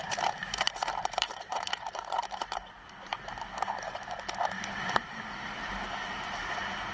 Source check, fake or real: fake